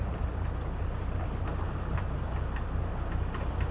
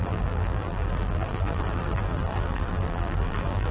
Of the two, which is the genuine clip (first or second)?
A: first